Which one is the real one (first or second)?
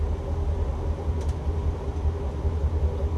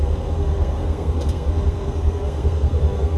first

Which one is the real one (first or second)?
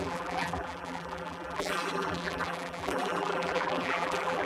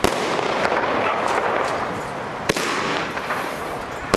second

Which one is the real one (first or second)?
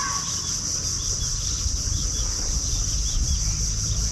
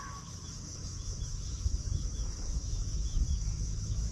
first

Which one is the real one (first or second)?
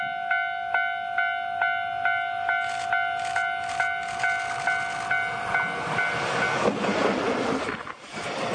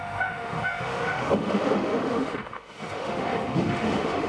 first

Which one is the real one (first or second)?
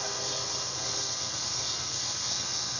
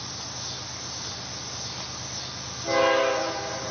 second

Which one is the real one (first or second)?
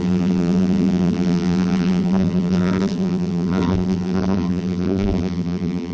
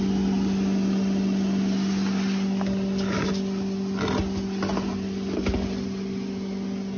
second